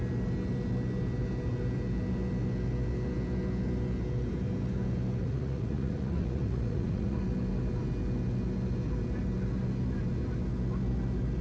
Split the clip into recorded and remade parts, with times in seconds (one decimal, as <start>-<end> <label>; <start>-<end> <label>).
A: 0.0-5.2 recorded; 5.2-7.2 remade; 7.2-11.4 recorded

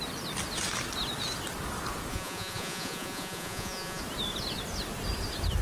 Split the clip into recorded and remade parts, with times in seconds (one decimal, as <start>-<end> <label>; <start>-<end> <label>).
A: 0.0-2.1 recorded; 2.1-4.0 remade; 4.0-5.6 recorded

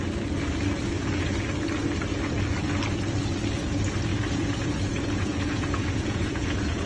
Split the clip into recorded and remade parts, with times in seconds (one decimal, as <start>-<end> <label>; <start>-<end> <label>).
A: 0.0-4.1 recorded; 4.1-6.9 remade

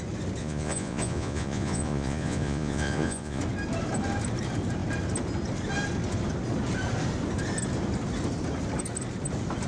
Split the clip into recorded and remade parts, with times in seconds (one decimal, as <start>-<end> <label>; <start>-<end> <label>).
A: 0.0-0.4 recorded; 0.4-3.4 remade; 3.4-9.7 recorded

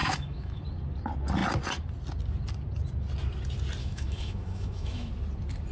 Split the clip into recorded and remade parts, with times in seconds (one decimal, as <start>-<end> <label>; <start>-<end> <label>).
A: 0.0-0.6 remade; 0.6-3.8 recorded; 3.8-5.1 remade; 5.1-5.7 recorded

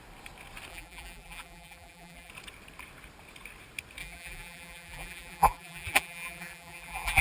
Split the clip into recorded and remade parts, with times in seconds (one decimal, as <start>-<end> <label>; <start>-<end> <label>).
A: 0.0-0.7 recorded; 0.7-2.3 remade; 2.3-4.0 recorded; 4.0-7.2 remade